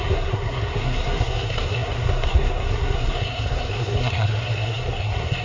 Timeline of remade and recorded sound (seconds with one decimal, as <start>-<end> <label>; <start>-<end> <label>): 0.0-5.4 remade